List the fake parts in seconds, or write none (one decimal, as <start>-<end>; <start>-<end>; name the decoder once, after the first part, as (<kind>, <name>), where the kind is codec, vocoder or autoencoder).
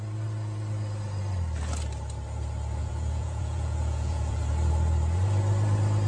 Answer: 2.8-4.4 (vocoder, Vocos)